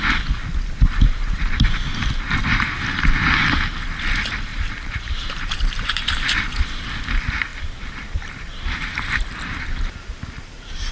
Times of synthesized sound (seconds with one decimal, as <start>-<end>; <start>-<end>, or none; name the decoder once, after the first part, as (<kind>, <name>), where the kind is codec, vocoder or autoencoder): 4.5-6.4 (vocoder, BigVGAN v2); 7.5-9.9